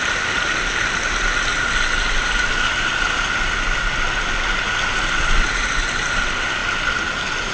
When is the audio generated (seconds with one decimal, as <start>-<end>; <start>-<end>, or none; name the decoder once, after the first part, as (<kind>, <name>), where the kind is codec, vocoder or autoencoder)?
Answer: none